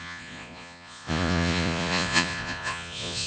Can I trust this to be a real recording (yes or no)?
no